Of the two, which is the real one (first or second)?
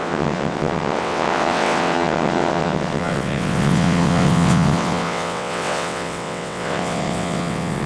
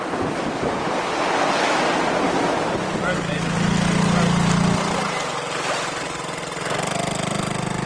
second